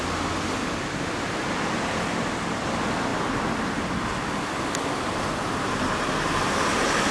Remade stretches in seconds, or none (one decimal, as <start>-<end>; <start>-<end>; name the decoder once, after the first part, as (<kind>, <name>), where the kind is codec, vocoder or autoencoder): none